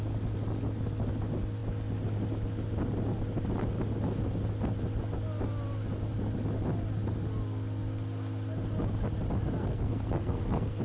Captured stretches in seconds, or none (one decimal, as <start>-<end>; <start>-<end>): 0.0-9.6